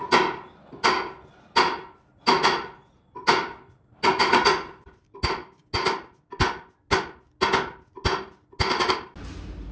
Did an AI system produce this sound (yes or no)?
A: no